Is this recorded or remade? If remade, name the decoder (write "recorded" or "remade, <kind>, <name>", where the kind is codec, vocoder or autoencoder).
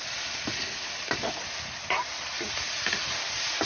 recorded